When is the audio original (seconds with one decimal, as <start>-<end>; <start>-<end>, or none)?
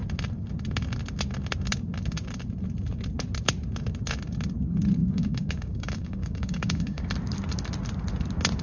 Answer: 0.0-5.0; 7.0-8.6